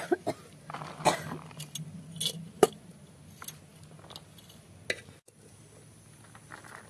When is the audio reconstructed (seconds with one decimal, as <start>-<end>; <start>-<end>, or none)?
none